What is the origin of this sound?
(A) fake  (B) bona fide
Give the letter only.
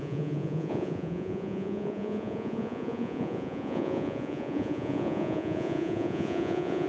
A